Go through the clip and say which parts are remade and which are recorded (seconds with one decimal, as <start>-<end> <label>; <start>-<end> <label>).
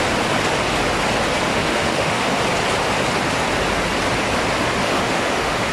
0.0-1.5 recorded; 1.5-2.3 remade; 2.3-4.8 recorded; 4.8-5.7 remade